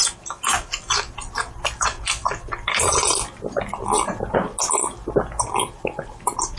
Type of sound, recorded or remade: recorded